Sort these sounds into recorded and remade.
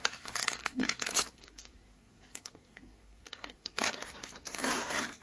remade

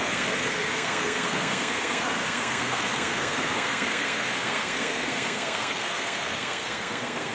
remade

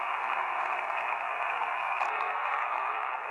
remade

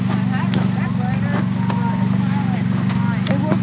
recorded